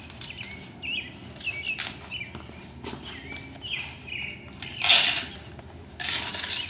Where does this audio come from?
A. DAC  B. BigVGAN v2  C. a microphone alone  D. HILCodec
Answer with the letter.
C